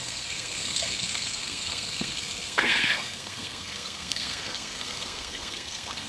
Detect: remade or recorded remade